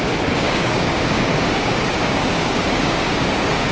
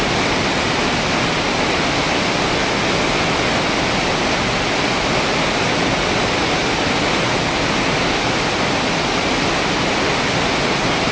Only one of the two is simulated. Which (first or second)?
first